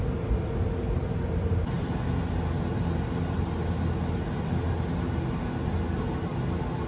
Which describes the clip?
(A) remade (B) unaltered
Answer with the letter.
B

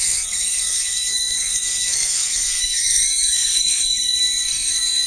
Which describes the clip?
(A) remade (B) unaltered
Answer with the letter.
A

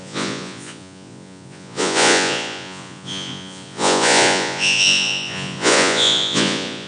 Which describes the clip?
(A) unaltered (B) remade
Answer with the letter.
B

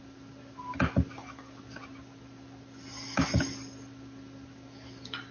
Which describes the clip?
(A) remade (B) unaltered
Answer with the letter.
B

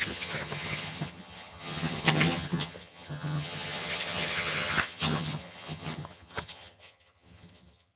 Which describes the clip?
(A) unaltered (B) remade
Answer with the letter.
B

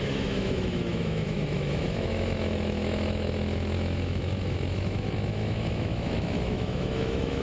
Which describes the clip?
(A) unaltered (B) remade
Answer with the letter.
B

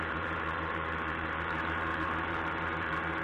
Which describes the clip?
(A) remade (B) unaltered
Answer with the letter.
A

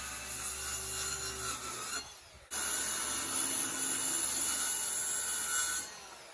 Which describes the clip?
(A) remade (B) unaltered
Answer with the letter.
B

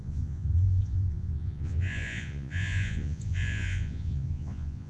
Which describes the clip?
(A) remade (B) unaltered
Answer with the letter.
A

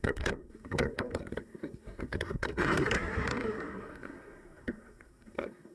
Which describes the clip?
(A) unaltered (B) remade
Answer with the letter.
B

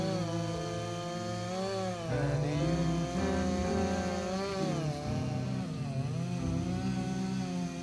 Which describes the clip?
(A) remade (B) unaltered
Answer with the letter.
B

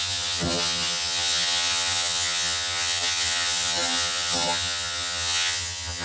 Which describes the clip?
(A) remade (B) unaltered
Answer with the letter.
A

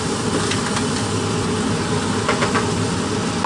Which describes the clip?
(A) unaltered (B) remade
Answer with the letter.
A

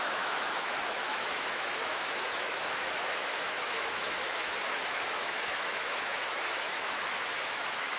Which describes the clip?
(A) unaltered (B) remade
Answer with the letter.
B